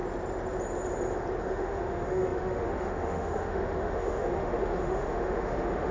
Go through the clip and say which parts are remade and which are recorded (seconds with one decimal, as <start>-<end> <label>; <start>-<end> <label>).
0.0-1.4 recorded; 1.4-5.9 remade